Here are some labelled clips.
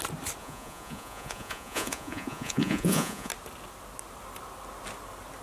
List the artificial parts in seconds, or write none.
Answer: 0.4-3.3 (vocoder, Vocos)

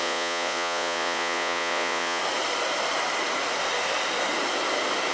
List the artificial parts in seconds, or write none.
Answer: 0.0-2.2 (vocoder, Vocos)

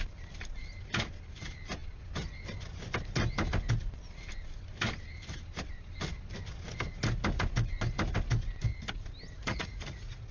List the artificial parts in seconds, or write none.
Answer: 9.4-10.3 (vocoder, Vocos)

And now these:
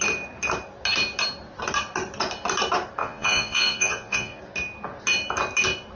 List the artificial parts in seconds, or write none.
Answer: 3.0-4.4 (vocoder, Vocos)

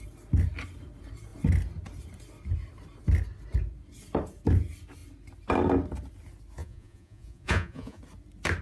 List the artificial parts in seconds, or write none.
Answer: 6.6-8.0 (vocoder, Vocos)

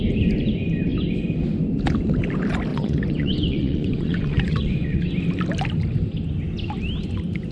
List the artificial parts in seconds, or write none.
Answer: 2.7-5.1 (vocoder, Vocos)

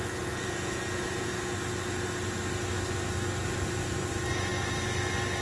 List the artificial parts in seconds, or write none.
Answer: 0.0-1.4 (vocoder, Vocos)

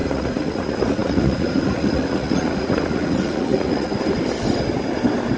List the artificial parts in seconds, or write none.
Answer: 0.0-3.9 (vocoder, Vocos)